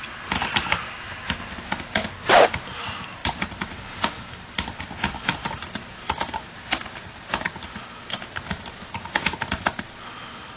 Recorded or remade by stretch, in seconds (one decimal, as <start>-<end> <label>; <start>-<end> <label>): 0.0-10.6 recorded